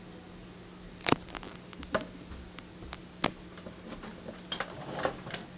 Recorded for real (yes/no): yes